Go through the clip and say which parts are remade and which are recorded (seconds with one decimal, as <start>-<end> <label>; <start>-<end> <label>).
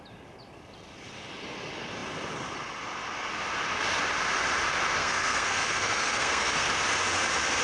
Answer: 0.0-5.0 recorded; 5.0-6.7 remade; 6.7-7.6 recorded